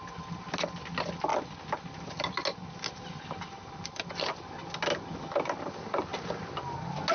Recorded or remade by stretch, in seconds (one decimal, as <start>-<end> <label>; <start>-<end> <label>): 0.0-7.1 recorded